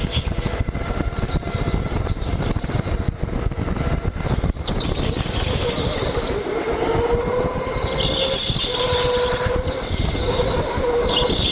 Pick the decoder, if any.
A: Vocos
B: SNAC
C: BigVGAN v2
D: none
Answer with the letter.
D